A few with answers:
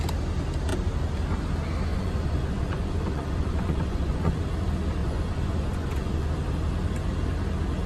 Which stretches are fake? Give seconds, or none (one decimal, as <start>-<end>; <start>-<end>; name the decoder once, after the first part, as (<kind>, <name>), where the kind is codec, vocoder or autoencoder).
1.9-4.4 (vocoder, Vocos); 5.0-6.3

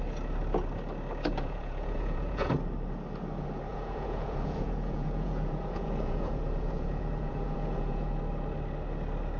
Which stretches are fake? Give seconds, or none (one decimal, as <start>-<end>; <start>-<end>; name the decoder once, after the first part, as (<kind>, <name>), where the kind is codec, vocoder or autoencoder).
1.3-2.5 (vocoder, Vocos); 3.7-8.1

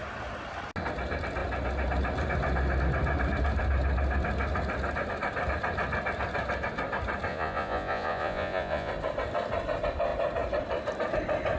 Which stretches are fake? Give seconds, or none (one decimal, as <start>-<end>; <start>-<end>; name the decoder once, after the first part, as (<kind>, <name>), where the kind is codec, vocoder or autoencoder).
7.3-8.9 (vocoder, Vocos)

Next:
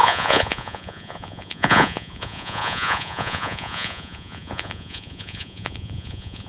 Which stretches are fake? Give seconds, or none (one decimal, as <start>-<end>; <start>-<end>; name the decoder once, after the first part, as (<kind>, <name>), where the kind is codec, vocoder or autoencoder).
0.0-6.5 (vocoder, Vocos)

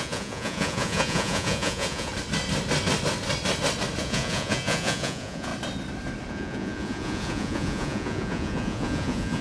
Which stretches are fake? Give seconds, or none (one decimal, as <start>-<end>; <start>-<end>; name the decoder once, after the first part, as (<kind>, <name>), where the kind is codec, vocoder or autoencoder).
0.0-2.1 (vocoder, Vocos); 4.0-5.5; 6.3-9.4

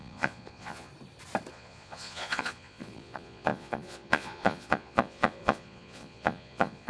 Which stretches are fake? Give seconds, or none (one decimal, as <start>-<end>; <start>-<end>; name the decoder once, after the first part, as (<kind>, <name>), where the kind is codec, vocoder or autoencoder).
0.0-0.9 (vocoder, Vocos); 1.5-6.9